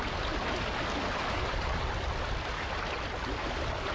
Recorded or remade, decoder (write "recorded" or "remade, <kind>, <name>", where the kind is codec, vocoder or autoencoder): recorded